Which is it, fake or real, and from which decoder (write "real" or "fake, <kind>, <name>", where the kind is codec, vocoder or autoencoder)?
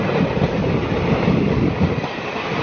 fake, vocoder, BigVGAN v2